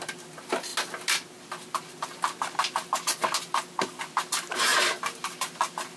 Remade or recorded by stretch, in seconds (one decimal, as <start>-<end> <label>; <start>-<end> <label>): 0.0-6.0 recorded